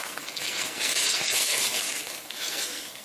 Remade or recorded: remade